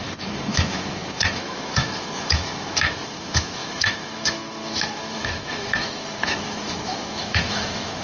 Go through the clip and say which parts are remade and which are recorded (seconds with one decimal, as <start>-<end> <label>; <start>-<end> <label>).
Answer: 0.0-8.0 remade